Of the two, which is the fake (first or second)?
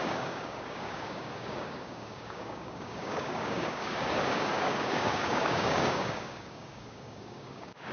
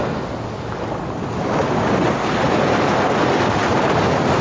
first